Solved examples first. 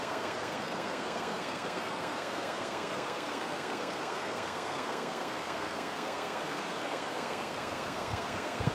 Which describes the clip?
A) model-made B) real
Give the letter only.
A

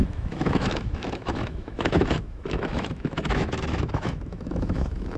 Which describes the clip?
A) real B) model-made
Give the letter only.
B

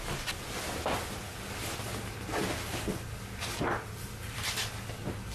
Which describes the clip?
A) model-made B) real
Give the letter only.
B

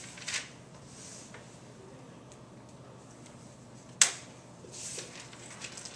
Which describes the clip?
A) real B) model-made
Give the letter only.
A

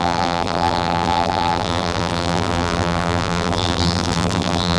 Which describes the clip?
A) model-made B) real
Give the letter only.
A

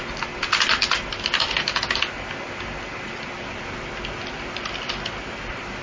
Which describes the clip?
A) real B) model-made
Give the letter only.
A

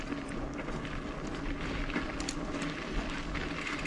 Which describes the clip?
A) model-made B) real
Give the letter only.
B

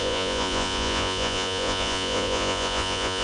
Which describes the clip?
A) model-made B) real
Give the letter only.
A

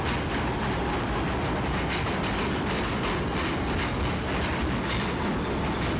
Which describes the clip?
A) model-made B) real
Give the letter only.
B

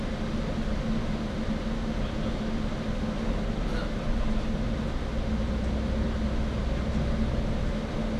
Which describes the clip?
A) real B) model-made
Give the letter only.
A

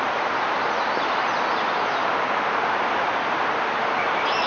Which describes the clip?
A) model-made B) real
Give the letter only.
B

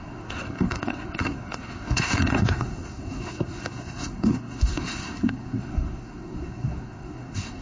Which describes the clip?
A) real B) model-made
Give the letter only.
B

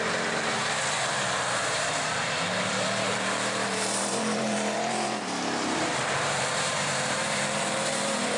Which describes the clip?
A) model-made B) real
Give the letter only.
A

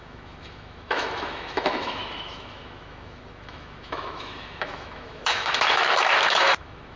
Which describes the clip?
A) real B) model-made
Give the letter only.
B